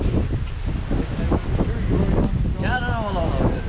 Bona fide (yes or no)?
yes